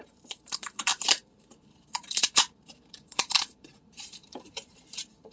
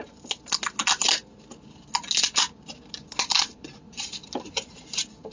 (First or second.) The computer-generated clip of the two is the first